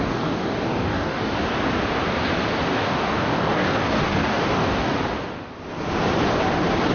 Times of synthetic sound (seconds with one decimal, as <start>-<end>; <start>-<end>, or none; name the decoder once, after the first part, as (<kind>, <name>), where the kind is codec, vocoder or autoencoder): 0.0-1.3 (codec, DAC); 2.7-4.9

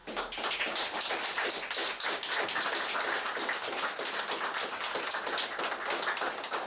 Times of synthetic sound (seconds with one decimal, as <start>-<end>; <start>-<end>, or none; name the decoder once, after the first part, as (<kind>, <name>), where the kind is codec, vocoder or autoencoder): none

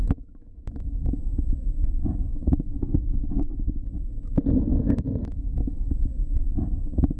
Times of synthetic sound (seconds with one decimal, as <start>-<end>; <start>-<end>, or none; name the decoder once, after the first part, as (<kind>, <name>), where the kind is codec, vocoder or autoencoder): 0.0-1.1 (autoencoder, DAC-VAE); 2.3-3.9; 4.7-5.9

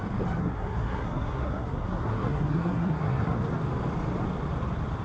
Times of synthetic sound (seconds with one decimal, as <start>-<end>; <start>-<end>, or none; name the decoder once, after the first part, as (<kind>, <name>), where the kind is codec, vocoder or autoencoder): 0.4-3.4 (codec, SNAC)

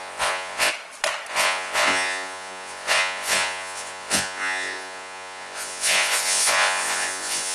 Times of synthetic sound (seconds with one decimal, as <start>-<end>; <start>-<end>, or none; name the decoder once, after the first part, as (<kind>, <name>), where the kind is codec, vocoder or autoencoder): 0.0-0.7 (vocoder, Vocos); 1.3-7.5